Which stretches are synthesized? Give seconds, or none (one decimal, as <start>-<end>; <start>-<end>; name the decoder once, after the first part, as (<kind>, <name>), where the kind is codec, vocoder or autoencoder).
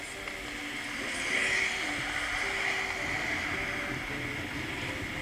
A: none